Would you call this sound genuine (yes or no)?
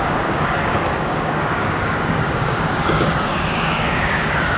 no